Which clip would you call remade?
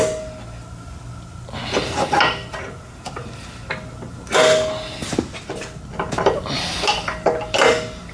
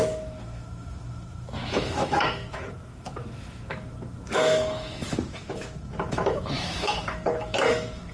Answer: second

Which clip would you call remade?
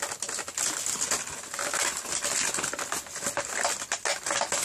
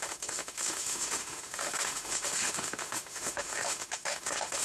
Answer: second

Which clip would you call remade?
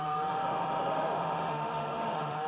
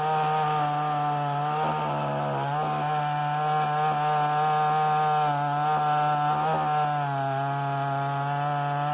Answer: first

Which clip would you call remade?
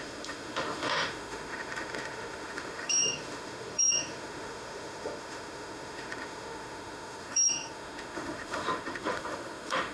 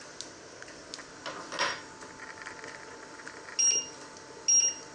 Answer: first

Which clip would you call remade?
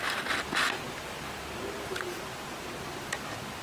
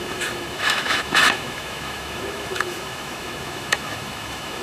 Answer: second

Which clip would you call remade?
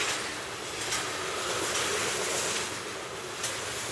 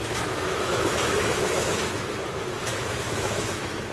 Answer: second